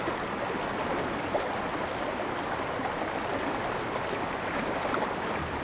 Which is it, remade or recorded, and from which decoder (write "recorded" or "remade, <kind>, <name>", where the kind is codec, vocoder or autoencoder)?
recorded